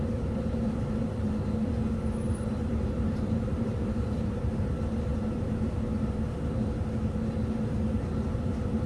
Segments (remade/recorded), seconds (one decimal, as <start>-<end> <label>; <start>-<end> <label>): 0.0-5.1 remade; 5.1-8.4 recorded; 8.4-8.9 remade